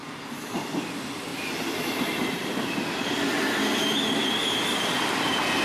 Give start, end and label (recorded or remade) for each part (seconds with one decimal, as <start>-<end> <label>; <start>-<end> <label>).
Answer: 0.0-5.6 recorded